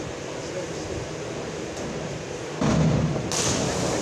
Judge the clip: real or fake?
real